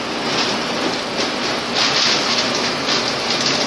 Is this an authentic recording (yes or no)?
yes